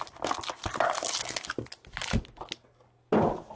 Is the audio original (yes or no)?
yes